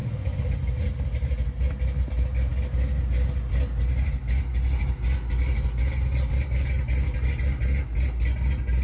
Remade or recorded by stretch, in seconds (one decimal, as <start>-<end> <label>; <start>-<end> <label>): 0.0-8.8 recorded